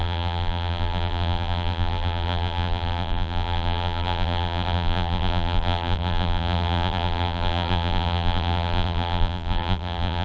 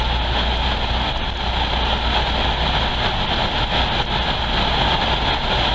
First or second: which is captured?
second